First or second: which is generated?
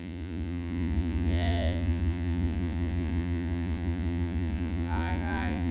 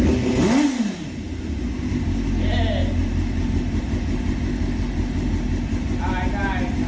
first